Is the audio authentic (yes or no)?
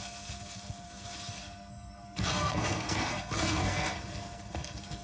no